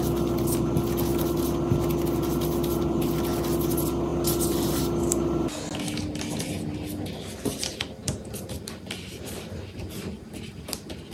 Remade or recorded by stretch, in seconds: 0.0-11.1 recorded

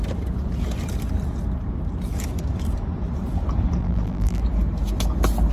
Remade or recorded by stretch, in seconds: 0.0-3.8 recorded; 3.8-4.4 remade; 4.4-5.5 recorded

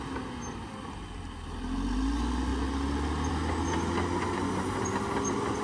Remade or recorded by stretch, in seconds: 0.0-5.6 recorded

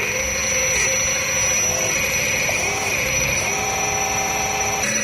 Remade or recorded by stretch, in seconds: 0.0-1.7 recorded; 1.7-5.0 remade

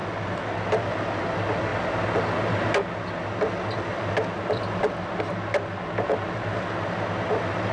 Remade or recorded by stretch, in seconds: 0.0-7.7 recorded

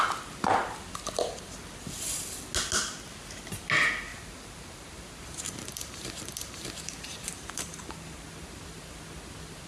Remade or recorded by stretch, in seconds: 0.0-4.1 recorded; 4.1-9.0 remade; 9.0-9.7 recorded

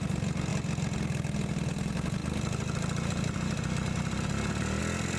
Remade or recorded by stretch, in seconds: 0.0-5.2 recorded

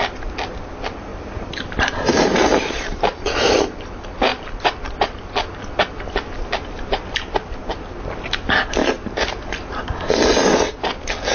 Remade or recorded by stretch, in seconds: 0.0-1.1 recorded; 1.1-3.8 remade; 3.8-4.3 recorded; 4.3-5.1 remade; 5.1-8.8 recorded; 8.8-9.8 remade; 9.8-11.3 recorded